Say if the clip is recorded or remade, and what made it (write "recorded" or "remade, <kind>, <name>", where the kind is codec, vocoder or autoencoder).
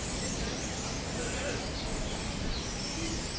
recorded